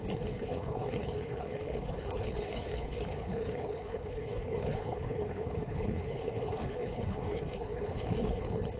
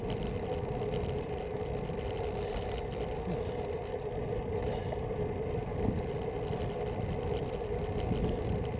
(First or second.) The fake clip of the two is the first